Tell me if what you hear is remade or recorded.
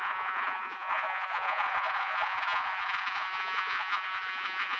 remade